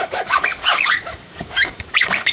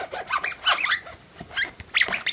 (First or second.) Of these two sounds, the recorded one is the second